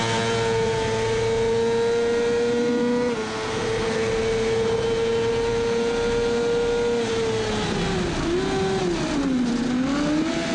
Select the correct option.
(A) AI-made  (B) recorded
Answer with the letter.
B